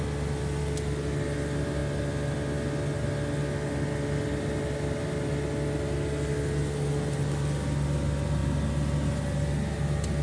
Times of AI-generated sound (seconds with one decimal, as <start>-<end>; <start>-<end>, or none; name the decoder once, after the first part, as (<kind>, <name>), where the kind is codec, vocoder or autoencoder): none